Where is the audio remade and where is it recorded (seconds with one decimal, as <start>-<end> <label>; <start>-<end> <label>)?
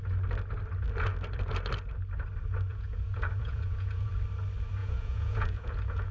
0.0-2.7 recorded; 2.7-4.1 remade; 4.1-4.8 recorded; 4.8-6.1 remade